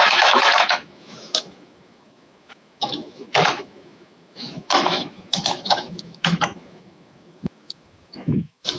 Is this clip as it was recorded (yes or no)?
no